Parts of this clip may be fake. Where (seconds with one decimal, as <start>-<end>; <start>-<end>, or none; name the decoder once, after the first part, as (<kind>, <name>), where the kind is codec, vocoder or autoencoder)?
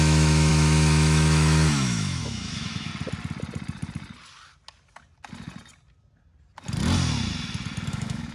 0.0-2.9 (autoencoder, DAC-VAE); 7.9-8.3